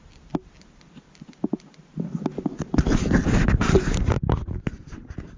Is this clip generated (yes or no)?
no